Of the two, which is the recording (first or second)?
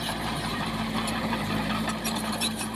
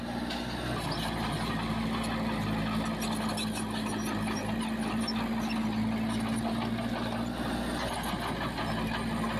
second